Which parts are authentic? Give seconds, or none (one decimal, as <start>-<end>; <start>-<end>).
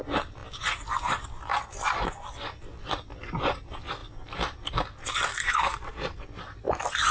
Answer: 0.0-5.4; 6.2-7.1